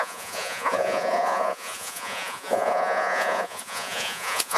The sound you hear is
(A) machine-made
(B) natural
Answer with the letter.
A